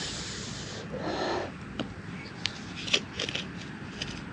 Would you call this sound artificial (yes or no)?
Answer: no